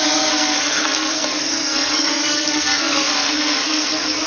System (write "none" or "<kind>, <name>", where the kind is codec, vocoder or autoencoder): codec, SNAC